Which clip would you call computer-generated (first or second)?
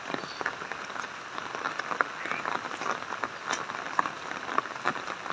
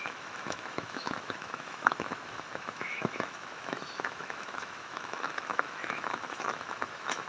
second